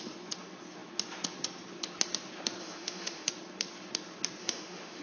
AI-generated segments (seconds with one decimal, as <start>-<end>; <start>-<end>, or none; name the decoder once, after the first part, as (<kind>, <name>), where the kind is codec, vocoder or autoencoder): 2.6-3.3 (autoencoder, DAC-VAE); 4.4-5.0